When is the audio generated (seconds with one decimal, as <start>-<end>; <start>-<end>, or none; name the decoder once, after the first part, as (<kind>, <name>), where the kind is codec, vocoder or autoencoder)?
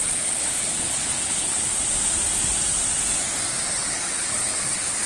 0.0-1.7 (codec, HILCodec); 3.9-5.1